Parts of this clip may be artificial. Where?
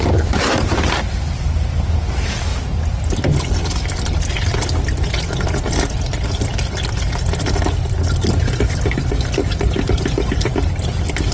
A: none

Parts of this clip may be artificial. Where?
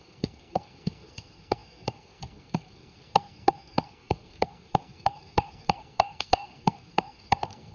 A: 0.0-7.7 (codec, SNAC)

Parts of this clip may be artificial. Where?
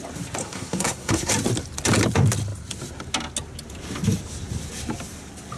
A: 0.4-1.3 (codec, SNAC)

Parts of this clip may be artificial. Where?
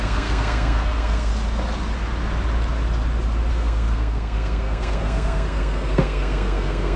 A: 0.0-1.3 (codec, SNAC); 3.5-7.0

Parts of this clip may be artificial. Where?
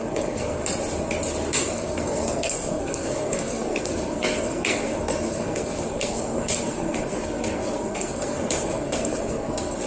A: 0.0-0.6 (codec, SNAC); 1.5-9.9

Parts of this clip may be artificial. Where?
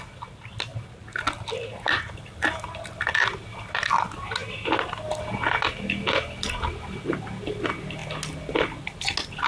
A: none